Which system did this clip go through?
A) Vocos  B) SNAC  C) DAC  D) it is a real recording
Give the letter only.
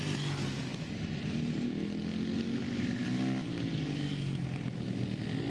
D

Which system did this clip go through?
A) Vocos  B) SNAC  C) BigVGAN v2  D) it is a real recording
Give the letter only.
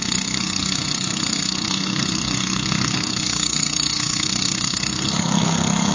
B